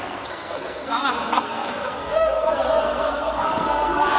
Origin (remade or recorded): remade